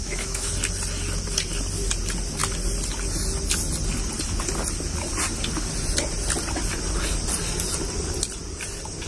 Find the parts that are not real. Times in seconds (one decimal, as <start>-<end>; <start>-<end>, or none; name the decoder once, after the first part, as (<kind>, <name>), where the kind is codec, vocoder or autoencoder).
0.0-0.5 (autoencoder, DAC-VAE)